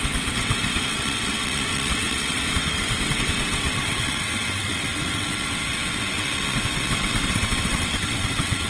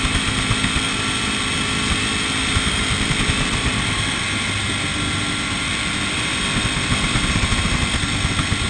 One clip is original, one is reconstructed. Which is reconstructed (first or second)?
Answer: first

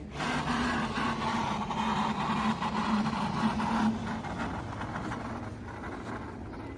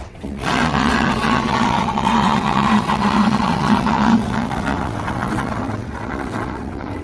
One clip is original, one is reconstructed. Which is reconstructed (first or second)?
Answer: second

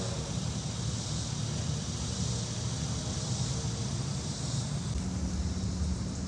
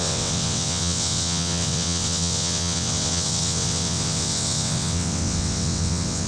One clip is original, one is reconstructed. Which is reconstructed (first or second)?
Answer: second